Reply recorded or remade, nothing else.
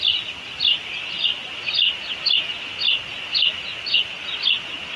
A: recorded